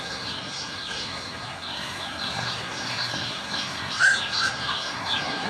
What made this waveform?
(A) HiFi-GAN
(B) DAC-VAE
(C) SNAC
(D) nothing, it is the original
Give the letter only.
C